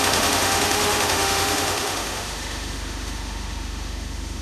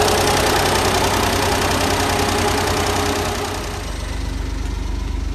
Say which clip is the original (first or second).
second